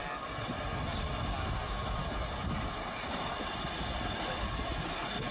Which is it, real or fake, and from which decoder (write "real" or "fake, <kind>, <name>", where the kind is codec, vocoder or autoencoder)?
real